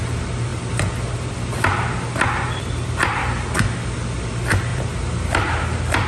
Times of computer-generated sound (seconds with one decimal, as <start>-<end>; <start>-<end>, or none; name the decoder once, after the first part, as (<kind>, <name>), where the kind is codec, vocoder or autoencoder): none